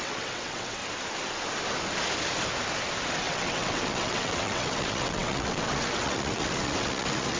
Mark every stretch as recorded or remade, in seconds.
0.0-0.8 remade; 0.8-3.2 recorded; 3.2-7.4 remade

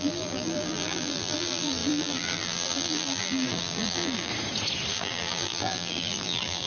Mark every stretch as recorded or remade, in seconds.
0.0-4.3 remade; 4.3-4.9 recorded; 4.9-6.7 remade

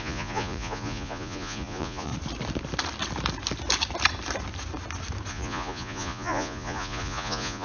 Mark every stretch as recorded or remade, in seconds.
0.0-2.1 remade; 2.1-5.3 recorded; 5.3-7.6 remade

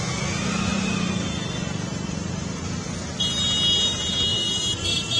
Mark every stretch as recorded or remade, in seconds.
0.0-0.7 recorded; 0.7-2.9 remade; 2.9-4.3 recorded; 4.3-5.2 remade

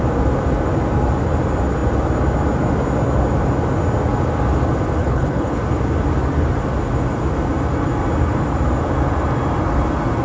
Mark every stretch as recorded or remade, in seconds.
0.0-5.0 recorded; 5.0-5.6 remade; 5.6-10.2 recorded

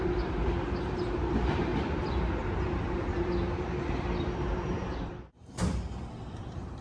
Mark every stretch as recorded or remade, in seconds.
0.0-6.8 remade